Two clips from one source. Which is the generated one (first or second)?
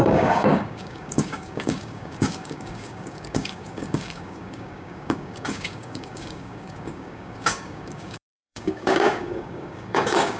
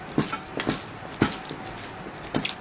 first